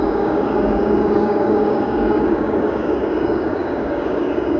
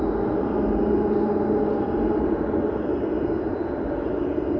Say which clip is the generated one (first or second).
first